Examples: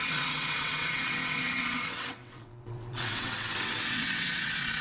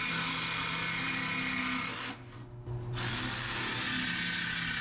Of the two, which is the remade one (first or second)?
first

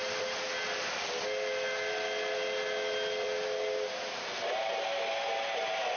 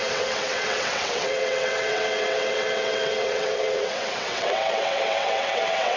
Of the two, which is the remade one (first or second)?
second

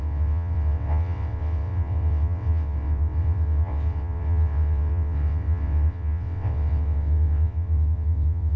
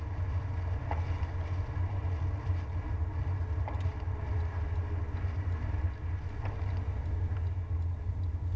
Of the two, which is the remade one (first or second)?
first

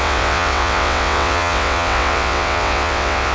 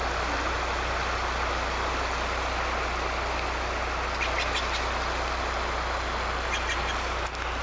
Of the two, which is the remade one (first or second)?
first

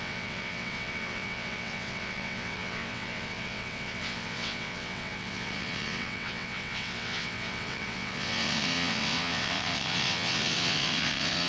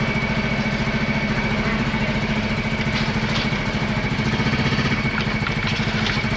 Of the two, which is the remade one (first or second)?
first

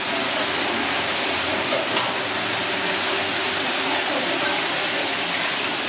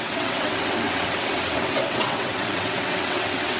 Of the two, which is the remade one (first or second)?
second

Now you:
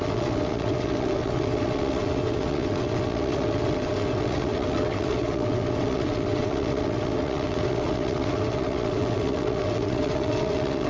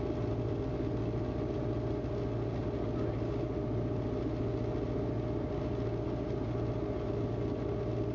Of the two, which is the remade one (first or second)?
first